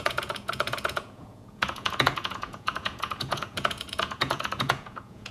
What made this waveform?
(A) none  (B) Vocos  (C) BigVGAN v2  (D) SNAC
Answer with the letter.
B